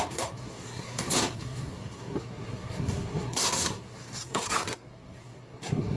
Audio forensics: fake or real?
fake